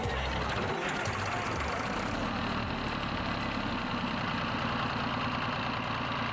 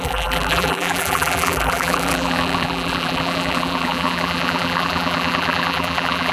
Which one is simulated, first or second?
second